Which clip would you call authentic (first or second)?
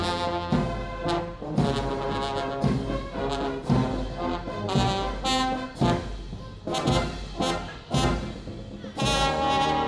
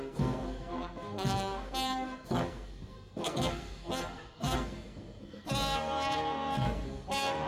first